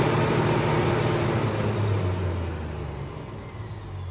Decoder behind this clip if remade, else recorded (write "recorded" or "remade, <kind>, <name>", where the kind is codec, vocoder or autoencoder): recorded